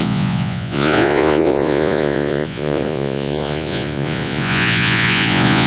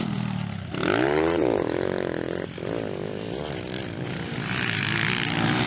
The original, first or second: second